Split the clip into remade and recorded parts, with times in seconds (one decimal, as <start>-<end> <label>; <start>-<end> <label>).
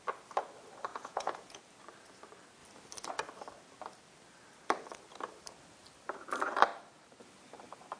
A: 0.0-0.9 recorded; 0.9-1.6 remade; 1.6-8.0 recorded